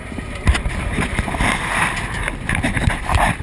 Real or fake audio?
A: fake